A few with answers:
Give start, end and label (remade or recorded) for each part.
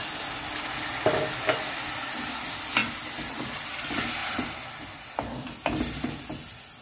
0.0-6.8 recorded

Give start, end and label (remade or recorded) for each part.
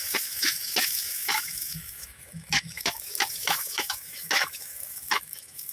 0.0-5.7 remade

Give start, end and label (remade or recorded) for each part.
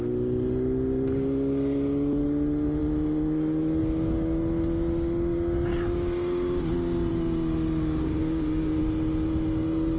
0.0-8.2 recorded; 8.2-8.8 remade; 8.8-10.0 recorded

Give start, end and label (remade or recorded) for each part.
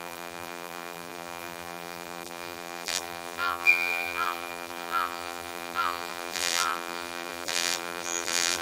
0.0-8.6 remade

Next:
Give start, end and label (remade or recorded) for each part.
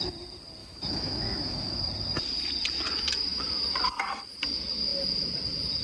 0.0-0.6 recorded; 0.6-1.8 remade; 1.8-5.8 recorded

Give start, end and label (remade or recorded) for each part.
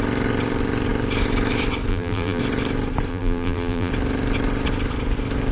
0.0-1.9 recorded; 1.9-2.4 remade; 2.4-3.1 recorded; 3.1-3.9 remade; 3.9-5.5 recorded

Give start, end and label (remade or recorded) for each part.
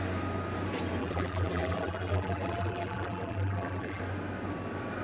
0.0-1.0 recorded; 1.0-4.0 remade; 4.0-5.0 recorded